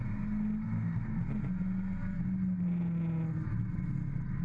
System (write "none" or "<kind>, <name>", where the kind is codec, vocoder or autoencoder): none